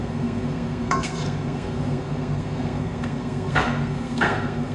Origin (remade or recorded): remade